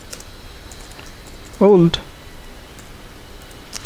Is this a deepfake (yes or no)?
no